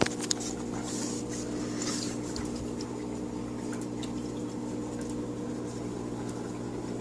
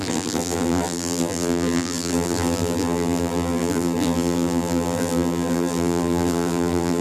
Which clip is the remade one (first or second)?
second